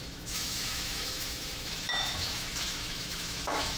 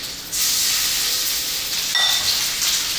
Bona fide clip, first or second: second